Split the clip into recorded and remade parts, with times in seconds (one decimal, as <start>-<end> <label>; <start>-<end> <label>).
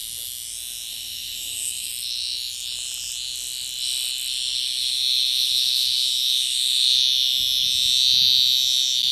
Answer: 0.0-0.9 recorded; 0.9-1.9 remade; 1.9-4.8 recorded; 4.8-7.0 remade; 7.0-9.1 recorded